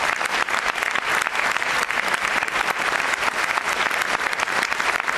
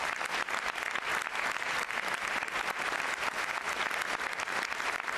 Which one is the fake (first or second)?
first